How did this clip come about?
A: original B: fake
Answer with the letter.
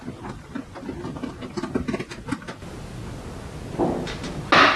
A